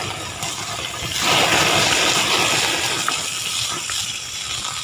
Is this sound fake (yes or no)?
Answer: no